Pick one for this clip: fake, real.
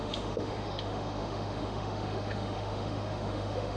fake